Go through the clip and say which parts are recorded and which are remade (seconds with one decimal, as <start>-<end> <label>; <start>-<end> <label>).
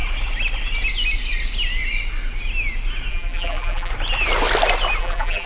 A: 0.0-3.1 recorded; 3.1-3.9 remade; 3.9-5.0 recorded; 5.0-5.5 remade